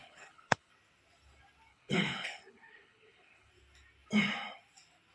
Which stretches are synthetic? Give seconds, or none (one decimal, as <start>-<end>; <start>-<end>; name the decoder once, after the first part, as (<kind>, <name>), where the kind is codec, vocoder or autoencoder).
0.0-0.7 (codec, HILCodec); 1.7-3.5